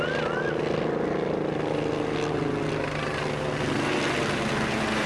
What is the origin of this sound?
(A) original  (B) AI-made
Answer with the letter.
A